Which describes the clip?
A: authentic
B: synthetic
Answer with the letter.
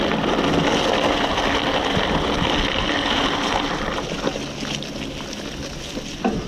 A